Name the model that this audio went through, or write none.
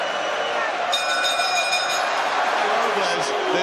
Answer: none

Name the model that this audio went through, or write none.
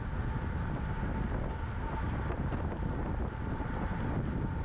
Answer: none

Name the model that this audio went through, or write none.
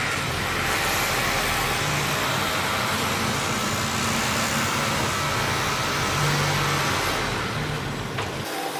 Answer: none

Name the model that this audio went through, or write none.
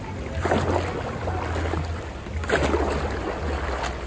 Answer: none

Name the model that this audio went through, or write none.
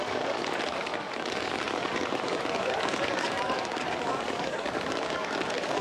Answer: codec, DAC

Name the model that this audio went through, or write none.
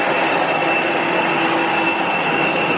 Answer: none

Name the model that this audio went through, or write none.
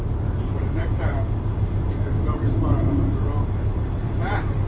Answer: vocoder, BigVGAN v2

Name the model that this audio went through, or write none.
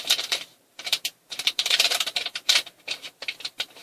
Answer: vocoder, BigVGAN v2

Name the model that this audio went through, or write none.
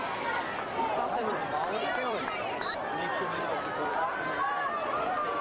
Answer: vocoder, BigVGAN v2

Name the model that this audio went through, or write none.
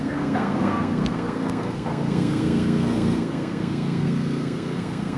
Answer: codec, SNAC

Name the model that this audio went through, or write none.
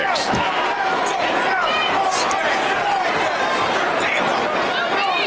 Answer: vocoder, BigVGAN v2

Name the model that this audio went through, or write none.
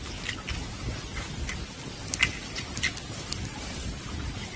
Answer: none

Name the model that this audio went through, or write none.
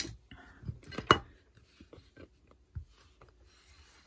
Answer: none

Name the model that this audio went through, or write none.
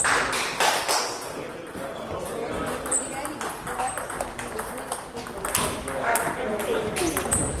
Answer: none